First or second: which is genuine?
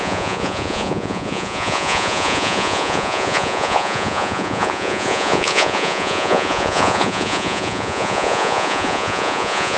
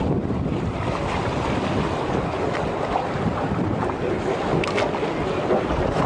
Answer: second